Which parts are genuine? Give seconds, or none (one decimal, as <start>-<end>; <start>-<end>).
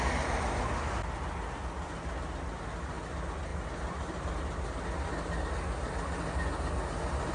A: 0.0-3.5; 4.3-7.3